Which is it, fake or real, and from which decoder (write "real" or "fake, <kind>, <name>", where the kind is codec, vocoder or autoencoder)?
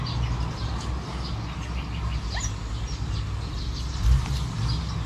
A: real